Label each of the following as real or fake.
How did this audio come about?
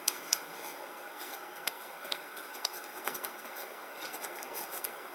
fake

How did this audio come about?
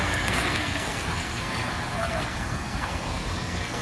fake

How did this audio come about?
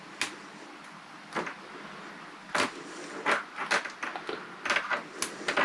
real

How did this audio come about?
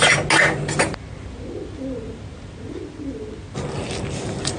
real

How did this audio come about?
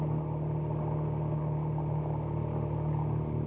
real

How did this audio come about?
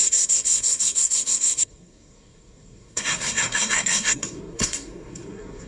fake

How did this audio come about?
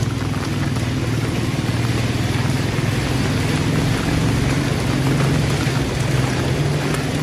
real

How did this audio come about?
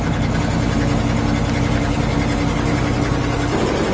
real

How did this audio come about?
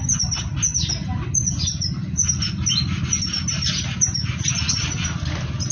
real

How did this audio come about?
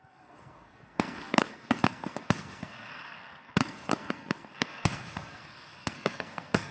fake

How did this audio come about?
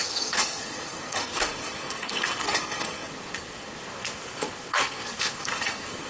fake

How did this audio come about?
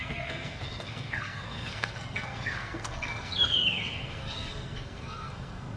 fake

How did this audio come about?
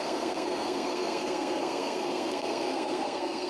fake